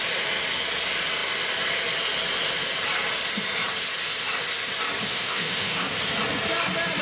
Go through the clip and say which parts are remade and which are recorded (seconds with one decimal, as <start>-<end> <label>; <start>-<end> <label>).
0.0-5.1 recorded; 5.1-5.9 remade; 5.9-7.0 recorded